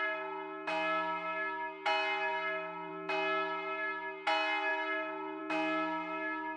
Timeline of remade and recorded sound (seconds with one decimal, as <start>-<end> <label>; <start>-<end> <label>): 0.0-6.6 recorded